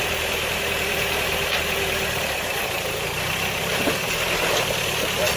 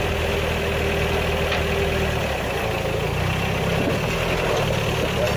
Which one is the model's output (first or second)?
first